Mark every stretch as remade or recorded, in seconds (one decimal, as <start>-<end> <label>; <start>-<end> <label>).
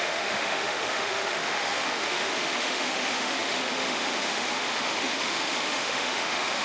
0.0-6.6 remade